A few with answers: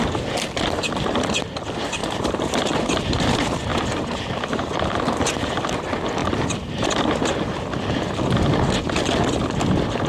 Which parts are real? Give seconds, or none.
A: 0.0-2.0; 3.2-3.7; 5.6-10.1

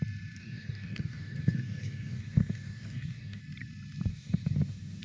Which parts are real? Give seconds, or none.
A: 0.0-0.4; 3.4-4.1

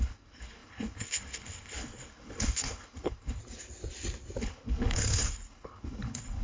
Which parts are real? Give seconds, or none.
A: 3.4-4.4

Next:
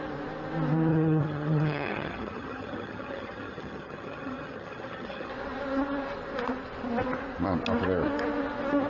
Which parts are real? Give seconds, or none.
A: 0.0-0.9; 5.3-8.9